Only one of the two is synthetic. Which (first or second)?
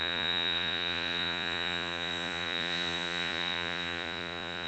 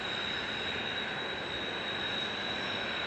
first